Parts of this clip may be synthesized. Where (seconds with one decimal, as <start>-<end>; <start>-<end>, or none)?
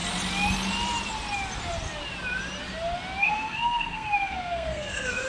3.2-5.3